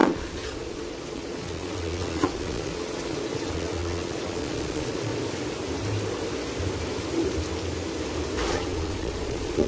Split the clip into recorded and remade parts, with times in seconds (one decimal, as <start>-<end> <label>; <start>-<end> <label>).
0.0-5.1 remade; 5.1-8.5 recorded; 8.5-9.7 remade